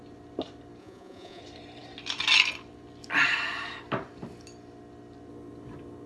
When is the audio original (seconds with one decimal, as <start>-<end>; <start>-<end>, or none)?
0.0-0.8; 1.4-6.1